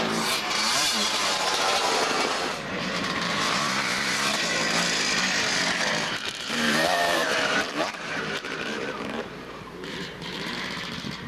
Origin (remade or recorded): remade